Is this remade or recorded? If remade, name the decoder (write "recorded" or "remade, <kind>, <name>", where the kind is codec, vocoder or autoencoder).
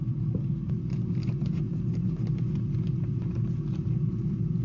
remade, vocoder, BigVGAN v2